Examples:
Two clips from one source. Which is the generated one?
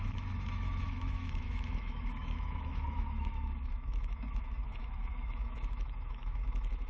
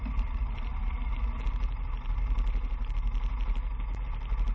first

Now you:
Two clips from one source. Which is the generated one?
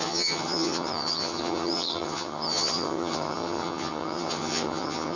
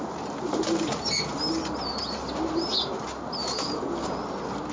first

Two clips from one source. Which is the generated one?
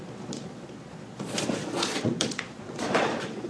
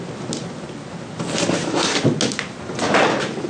first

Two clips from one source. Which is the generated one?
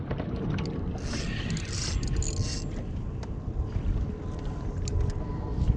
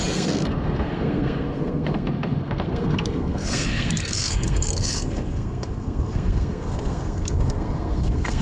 second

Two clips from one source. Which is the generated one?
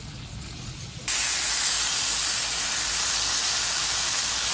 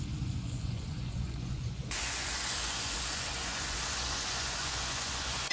second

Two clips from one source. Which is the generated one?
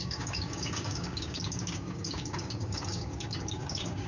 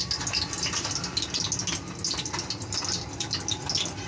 first